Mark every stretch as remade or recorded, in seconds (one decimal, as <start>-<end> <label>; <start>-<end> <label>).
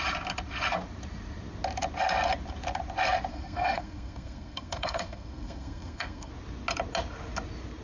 0.0-3.3 recorded; 3.3-6.3 remade; 6.3-7.8 recorded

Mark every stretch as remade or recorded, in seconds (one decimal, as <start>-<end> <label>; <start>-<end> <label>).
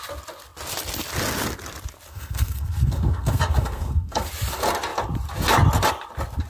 0.0-2.1 recorded; 2.1-4.3 remade; 4.3-6.5 recorded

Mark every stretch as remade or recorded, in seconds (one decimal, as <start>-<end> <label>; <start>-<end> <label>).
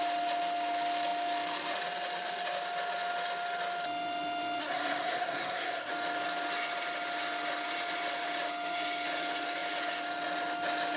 0.0-4.6 recorded; 4.6-5.9 remade; 5.9-11.0 recorded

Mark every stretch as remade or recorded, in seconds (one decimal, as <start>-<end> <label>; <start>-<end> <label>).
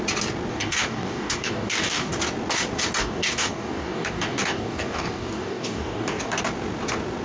0.0-0.5 recorded; 0.5-2.1 remade; 2.1-3.0 recorded; 3.0-6.4 remade; 6.4-7.2 recorded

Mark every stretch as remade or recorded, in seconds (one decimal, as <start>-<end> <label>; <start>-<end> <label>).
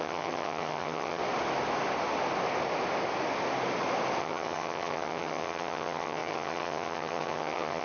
0.0-1.2 remade; 1.2-4.2 recorded; 4.2-7.8 remade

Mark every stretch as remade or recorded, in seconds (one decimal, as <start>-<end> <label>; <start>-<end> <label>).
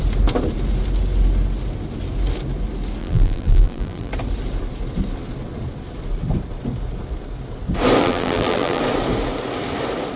0.0-3.0 recorded; 3.0-4.1 remade; 4.1-8.0 recorded; 8.0-8.8 remade; 8.8-10.2 recorded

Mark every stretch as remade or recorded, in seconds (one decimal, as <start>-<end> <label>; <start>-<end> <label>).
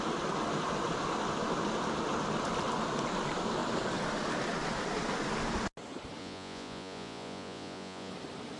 0.0-6.2 recorded; 6.2-8.1 remade; 8.1-8.6 recorded